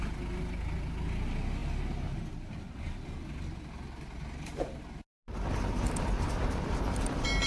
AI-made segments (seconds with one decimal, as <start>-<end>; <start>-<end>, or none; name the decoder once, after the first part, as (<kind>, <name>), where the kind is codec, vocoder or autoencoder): none